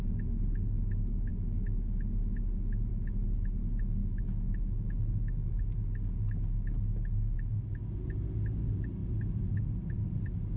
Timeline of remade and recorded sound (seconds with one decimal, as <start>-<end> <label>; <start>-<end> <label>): 0.0-4.0 recorded; 4.0-5.6 remade; 5.6-10.6 recorded